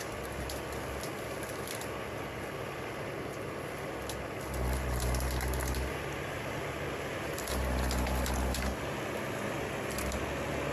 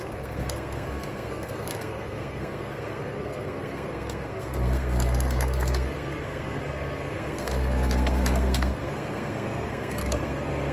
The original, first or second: first